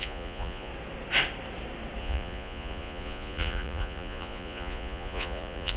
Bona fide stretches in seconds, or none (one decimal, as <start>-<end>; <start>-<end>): 0.7-2.0